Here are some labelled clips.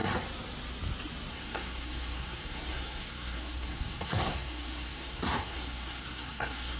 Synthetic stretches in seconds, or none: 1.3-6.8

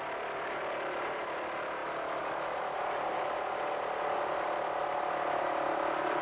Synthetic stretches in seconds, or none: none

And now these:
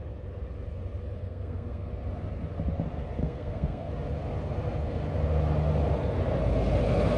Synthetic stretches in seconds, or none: 1.2-1.9; 3.2-3.9

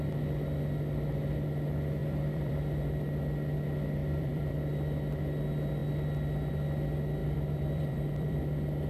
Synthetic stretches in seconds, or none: 2.0-2.5; 4.0-4.5; 7.2-8.4

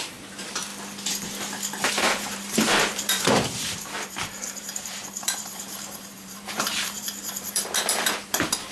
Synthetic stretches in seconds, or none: 0.0-0.7; 1.9-8.7

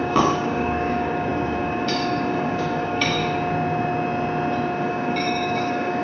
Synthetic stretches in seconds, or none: 0.0-3.2; 4.8-6.0

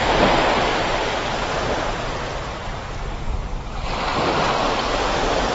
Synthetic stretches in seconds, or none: 0.7-2.8; 4.1-4.8

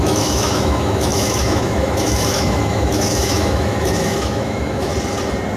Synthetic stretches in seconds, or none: 0.0-4.9